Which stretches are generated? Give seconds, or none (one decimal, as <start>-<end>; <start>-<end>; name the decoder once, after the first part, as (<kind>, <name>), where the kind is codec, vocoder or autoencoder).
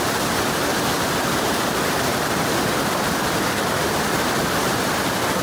none